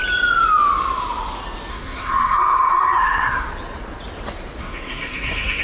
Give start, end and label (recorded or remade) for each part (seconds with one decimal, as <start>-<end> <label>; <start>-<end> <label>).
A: 0.0-1.7 recorded; 1.7-3.5 remade; 3.5-4.6 recorded; 4.6-5.6 remade